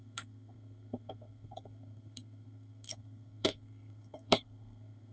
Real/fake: fake